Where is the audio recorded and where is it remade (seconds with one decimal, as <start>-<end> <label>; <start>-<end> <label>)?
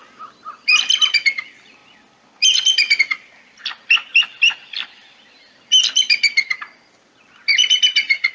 0.0-8.3 recorded